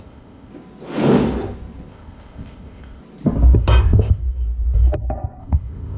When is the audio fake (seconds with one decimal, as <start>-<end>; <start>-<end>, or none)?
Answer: 0.0-0.5; 1.9-3.0; 3.8-4.2; 5.4-6.0